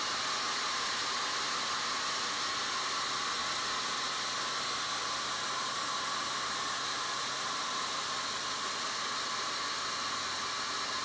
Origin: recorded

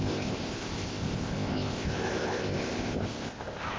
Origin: remade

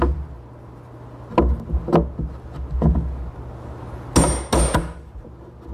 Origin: recorded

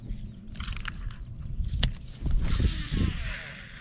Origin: recorded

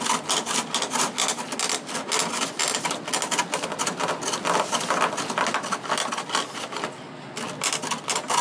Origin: recorded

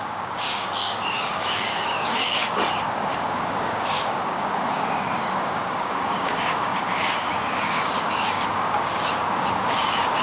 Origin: remade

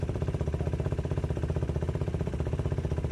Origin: remade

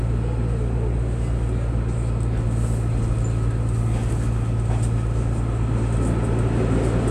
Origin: recorded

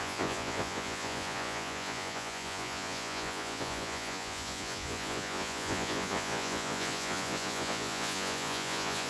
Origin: remade